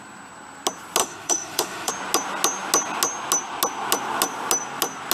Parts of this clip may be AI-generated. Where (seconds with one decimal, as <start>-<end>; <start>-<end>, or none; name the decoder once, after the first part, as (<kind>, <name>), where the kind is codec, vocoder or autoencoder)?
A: 1.0-1.9 (autoencoder, DAC-VAE)

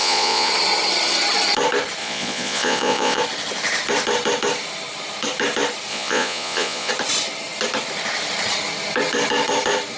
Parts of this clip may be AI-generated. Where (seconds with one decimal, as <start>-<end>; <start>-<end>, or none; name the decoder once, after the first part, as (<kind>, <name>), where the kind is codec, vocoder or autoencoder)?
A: 0.0-0.5 (vocoder, Vocos); 2.0-3.2; 5.9-6.9

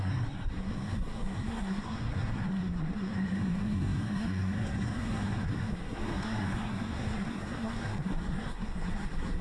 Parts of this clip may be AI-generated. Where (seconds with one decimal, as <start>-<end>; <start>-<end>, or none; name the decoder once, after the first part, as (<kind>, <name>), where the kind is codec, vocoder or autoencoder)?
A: 0.0-9.4 (codec, SNAC)

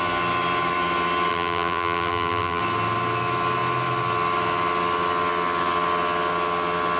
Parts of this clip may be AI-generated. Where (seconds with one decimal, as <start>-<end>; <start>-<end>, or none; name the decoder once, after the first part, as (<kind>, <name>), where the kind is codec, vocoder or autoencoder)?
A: 1.3-2.6 (vocoder, BigVGAN v2)

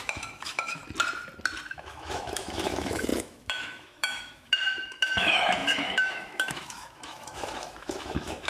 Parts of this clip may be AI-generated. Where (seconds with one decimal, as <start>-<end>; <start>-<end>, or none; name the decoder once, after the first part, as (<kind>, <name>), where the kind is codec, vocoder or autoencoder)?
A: 0.0-0.8 (autoencoder, DAC-VAE); 1.7-8.5